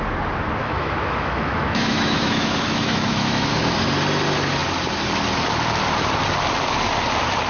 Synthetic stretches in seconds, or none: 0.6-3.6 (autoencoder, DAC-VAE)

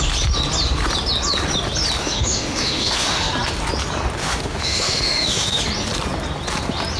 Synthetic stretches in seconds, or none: 2.0-3.3 (autoencoder, DAC-VAE); 4.2-5.6

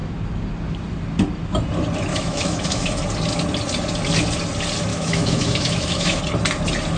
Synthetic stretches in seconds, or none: 2.1-3.0 (autoencoder, DAC-VAE); 4.9-6.2

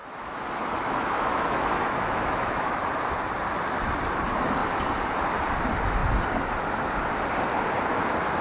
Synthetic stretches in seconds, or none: 0.0-2.8 (autoencoder, DAC-VAE)

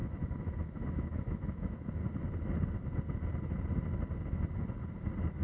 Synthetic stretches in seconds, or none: 0.0-2.0 (autoencoder, DAC-VAE)

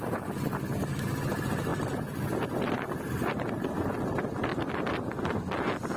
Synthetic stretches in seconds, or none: none